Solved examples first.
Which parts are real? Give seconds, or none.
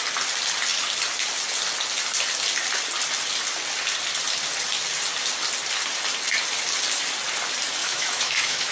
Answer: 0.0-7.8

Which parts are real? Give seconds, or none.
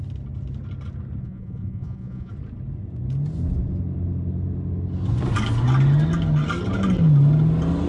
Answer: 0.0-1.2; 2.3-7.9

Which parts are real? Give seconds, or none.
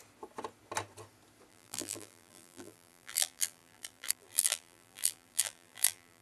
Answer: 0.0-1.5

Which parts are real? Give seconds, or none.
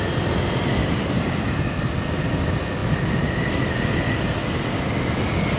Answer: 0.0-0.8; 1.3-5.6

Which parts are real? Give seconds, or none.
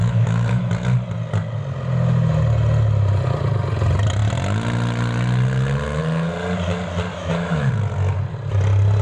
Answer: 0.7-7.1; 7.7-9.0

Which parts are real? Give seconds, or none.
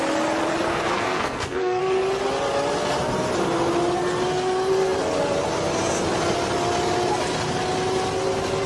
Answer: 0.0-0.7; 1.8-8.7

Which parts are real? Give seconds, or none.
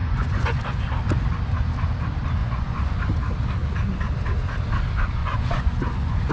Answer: 0.6-2.4; 3.2-5.2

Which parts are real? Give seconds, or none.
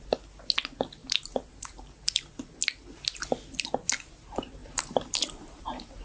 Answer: 0.0-1.0; 2.5-4.6